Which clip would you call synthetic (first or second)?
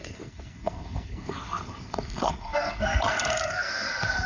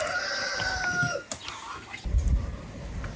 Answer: first